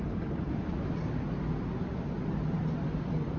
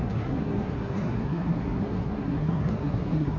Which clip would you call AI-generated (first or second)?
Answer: second